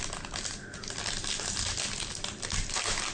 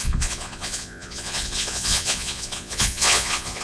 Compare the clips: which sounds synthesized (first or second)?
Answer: second